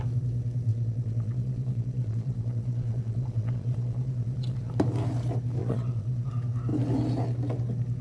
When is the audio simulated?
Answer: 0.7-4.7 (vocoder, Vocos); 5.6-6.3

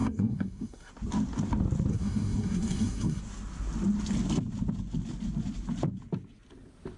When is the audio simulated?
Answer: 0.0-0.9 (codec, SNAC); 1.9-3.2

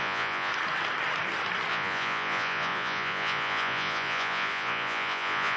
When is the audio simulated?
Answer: 0.0-0.5 (vocoder, Vocos); 1.7-5.6

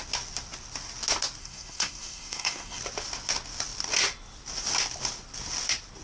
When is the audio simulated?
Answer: 1.4-2.8 (codec, SNAC)

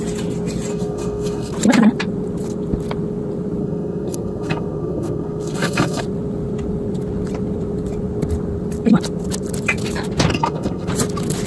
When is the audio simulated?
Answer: 0.7-1.5 (codec, SNAC); 3.6-6.0; 10.3-10.9

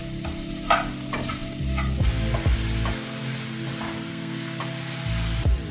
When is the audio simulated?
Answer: 4.1-4.6 (codec, SNAC)

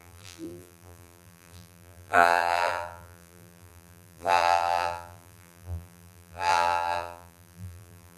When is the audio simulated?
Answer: 0.0-8.2 (vocoder, BigVGAN v2)

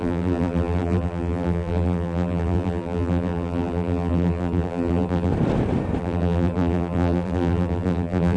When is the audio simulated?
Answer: 0.0-5.3 (vocoder, BigVGAN v2); 6.0-8.4